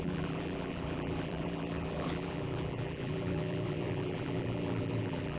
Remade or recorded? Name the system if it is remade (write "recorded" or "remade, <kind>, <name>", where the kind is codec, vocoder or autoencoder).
remade, vocoder, BigVGAN v2